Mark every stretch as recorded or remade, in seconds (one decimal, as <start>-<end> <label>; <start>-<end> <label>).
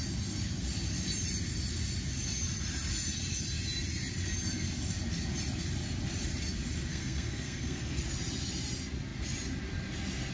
0.0-6.9 recorded; 6.9-8.0 remade; 8.0-10.3 recorded